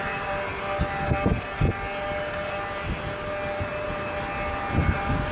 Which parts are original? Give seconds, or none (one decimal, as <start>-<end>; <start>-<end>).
0.0-5.3